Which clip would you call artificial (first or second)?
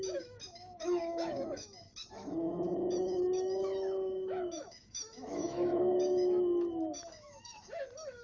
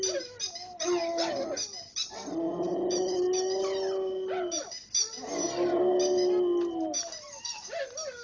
first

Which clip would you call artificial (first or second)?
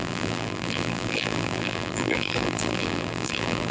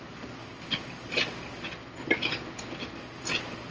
first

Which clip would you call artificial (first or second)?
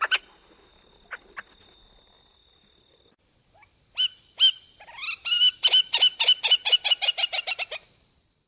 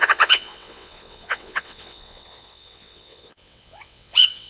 second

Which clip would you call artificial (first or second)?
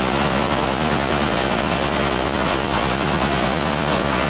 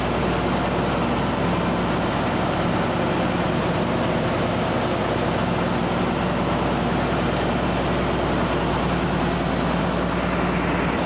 first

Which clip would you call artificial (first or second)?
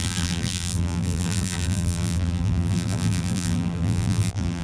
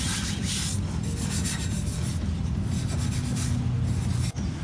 first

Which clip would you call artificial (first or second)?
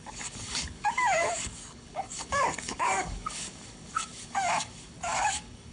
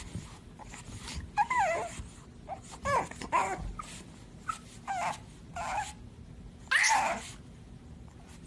first